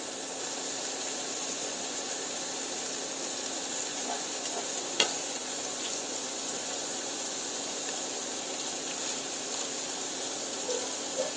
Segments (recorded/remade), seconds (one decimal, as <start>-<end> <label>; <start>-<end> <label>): 0.0-1.4 recorded; 1.4-2.1 remade; 2.1-3.9 recorded; 3.9-7.8 remade; 7.8-11.4 recorded